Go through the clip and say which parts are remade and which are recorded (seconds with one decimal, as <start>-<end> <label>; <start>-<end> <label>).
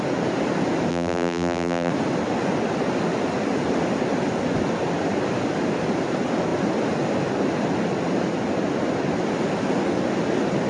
0.0-0.9 recorded; 0.9-1.9 remade; 1.9-10.7 recorded